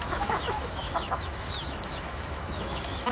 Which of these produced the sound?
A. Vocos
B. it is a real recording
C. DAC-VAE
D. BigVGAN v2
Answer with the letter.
C